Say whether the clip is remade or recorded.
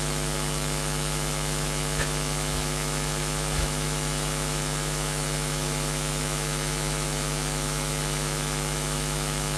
remade